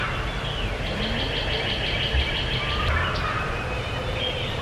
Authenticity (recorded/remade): recorded